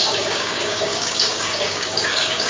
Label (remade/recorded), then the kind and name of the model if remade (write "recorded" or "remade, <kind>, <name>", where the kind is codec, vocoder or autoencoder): remade, codec, DAC